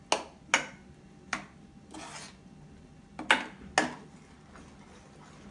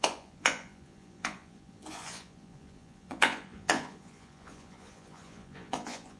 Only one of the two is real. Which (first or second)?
first